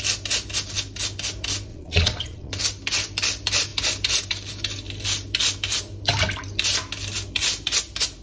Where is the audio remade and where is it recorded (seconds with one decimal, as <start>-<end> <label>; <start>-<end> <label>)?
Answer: 0.0-1.7 recorded; 1.7-2.5 remade; 2.5-8.2 recorded